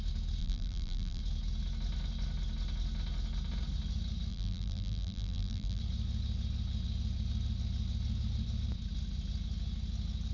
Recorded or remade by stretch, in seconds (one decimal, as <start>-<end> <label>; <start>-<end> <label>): 0.0-0.4 recorded; 0.4-1.2 remade; 1.2-4.3 recorded; 4.3-5.8 remade; 5.8-10.3 recorded